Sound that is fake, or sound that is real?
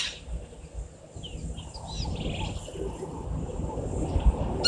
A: real